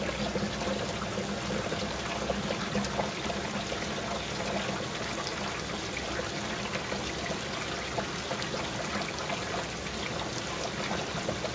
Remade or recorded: recorded